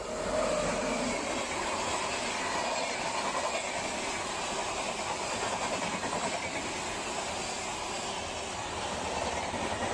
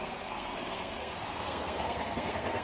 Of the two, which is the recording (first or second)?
first